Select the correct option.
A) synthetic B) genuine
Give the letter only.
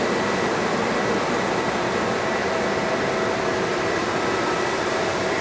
B